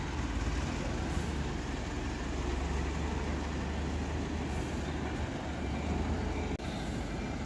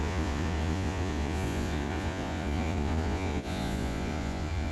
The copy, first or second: second